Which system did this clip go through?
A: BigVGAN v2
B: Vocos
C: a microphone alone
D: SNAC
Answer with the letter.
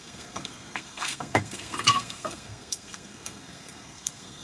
D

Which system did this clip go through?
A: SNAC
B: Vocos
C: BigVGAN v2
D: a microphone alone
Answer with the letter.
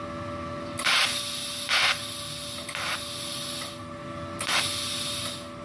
D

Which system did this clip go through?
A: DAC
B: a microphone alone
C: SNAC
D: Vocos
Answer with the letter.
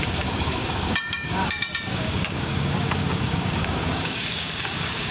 A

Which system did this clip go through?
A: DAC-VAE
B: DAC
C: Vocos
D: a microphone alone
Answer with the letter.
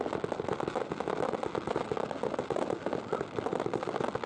D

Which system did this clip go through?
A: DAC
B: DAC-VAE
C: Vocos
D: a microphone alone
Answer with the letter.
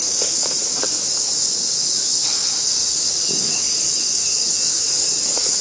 A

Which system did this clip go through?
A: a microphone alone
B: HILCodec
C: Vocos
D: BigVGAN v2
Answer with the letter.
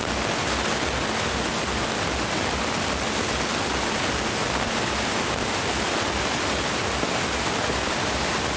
A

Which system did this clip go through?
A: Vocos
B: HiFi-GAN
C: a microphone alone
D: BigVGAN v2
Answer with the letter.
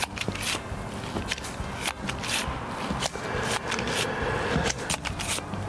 C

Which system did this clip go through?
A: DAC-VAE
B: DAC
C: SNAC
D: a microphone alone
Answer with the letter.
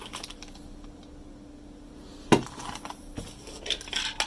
D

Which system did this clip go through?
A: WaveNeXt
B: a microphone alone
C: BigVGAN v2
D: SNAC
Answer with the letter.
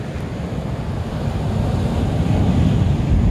B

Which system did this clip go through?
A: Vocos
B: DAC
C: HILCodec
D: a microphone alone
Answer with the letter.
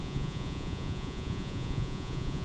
A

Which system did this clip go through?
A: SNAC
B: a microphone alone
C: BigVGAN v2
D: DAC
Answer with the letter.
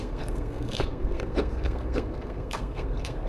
A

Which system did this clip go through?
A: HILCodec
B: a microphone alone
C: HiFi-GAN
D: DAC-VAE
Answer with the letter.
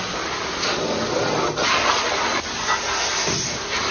B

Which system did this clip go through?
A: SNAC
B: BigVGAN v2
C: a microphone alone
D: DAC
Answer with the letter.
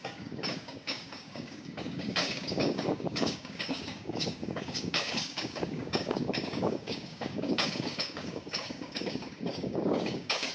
D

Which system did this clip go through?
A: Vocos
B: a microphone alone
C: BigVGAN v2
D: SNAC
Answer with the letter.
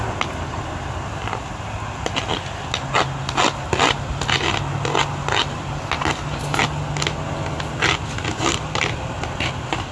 B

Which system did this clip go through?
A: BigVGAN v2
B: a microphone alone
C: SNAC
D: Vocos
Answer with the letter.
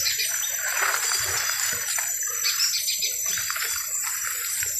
B